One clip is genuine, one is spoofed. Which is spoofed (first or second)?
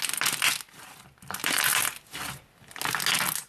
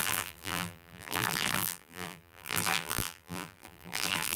second